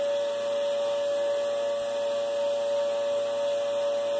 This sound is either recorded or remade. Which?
recorded